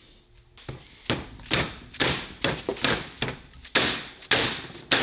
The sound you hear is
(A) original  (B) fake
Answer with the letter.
A